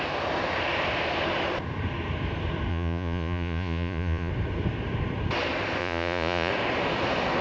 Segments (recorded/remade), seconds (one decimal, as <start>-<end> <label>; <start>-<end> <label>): 0.0-2.7 recorded; 2.7-4.3 remade; 4.3-5.8 recorded; 5.8-6.5 remade; 6.5-7.4 recorded